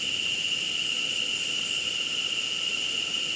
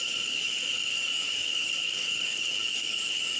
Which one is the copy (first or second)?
second